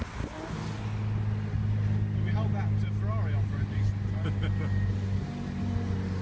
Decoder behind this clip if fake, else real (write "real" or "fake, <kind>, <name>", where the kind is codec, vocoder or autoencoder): real